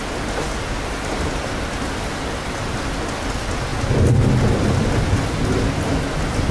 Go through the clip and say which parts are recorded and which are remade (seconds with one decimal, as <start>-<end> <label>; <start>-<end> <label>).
0.0-6.5 recorded